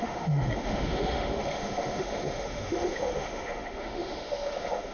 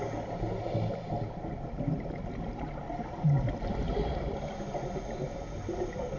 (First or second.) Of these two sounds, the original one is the second